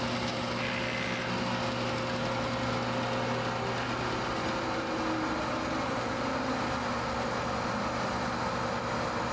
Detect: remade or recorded recorded